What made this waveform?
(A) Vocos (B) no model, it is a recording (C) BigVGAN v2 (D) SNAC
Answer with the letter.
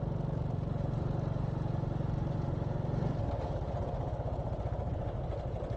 B